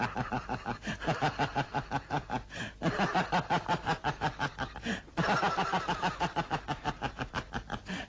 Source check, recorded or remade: recorded